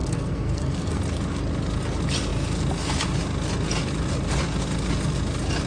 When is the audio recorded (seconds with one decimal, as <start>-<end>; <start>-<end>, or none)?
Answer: 1.0-5.7